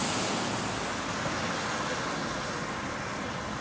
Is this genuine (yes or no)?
yes